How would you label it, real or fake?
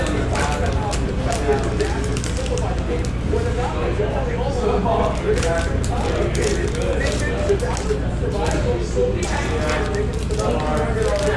real